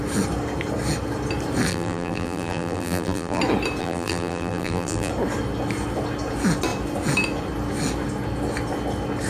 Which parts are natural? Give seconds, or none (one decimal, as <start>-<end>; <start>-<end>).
0.0-1.7; 3.4-3.8; 5.1-9.3

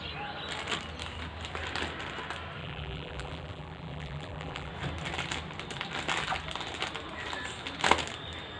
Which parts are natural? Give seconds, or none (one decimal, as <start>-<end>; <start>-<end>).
0.0-2.6; 4.7-8.6

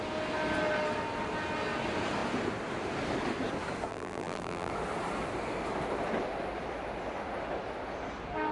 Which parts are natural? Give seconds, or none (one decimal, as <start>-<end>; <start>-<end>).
0.0-3.9; 4.7-8.5